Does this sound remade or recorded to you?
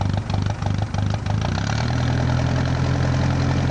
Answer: recorded